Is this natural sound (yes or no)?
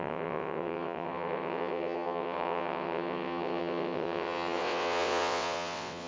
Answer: no